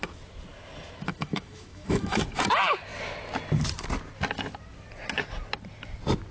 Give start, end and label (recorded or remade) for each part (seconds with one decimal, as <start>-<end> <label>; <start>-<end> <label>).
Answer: 0.0-1.1 recorded; 1.1-2.2 remade; 2.2-6.3 recorded